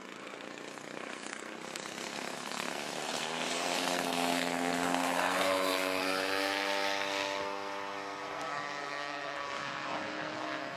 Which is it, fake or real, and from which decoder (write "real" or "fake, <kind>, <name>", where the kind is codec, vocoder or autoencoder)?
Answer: fake, codec, SNAC